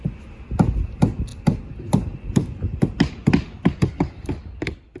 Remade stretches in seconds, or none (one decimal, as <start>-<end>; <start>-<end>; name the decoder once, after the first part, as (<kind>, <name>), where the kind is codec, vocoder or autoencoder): none